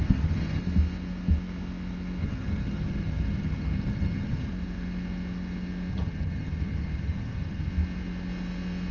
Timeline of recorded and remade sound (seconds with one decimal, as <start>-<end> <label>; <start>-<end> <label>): 0.0-0.6 remade; 0.6-2.2 recorded; 2.2-4.5 remade; 4.5-5.9 recorded; 5.9-7.7 remade; 7.7-8.9 recorded